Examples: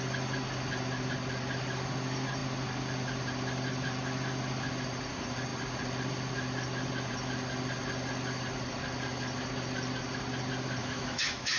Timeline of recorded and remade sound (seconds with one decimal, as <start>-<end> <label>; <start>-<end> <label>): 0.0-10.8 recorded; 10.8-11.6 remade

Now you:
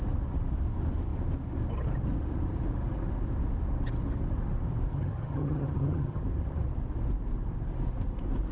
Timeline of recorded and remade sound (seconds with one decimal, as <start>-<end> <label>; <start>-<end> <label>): 0.0-4.9 recorded; 4.9-6.2 remade; 6.2-8.5 recorded

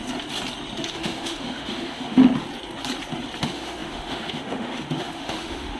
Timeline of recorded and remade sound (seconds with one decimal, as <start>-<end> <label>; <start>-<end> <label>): 0.0-0.9 recorded; 0.9-2.2 remade; 2.2-3.4 recorded; 3.4-5.8 remade

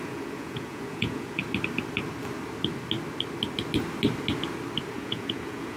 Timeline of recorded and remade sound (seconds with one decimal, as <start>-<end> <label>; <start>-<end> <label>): 0.0-1.4 remade; 1.4-4.9 recorded; 4.9-5.8 remade

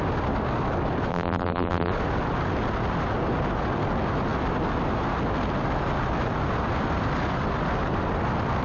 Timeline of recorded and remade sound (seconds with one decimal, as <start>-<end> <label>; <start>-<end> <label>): 0.0-1.1 recorded; 1.1-1.9 remade; 1.9-8.6 recorded